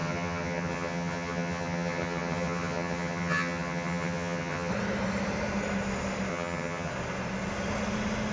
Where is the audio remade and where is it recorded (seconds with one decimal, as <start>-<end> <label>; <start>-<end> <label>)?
0.0-4.7 remade; 4.7-6.3 recorded; 6.3-6.9 remade; 6.9-8.3 recorded